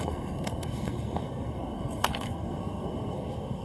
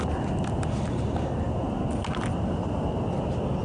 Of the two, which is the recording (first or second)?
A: second